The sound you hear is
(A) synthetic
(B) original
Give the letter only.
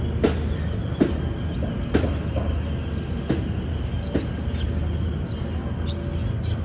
B